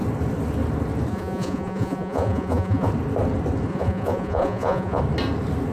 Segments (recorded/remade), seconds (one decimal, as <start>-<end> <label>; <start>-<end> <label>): 0.0-1.1 recorded; 1.1-2.9 remade; 2.9-3.7 recorded; 3.7-5.0 remade; 5.0-5.7 recorded